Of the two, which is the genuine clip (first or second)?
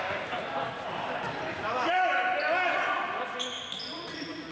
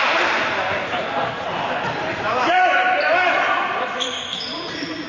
first